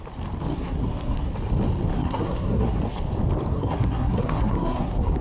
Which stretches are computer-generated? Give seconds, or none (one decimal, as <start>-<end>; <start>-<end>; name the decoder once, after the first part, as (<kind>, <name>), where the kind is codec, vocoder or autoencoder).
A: 0.5-1.3 (codec, SNAC); 1.9-2.8; 3.5-5.2